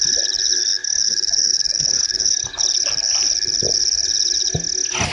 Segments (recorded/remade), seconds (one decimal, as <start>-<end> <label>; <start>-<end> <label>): 0.0-0.7 recorded; 0.7-2.5 remade; 2.5-5.1 recorded